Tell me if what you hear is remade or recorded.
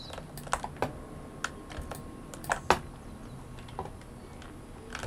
recorded